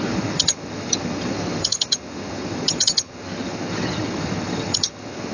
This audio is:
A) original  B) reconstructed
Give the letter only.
B